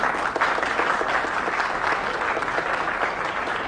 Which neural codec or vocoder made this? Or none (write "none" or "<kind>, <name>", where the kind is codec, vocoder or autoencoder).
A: none